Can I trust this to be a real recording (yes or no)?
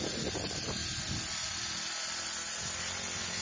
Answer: yes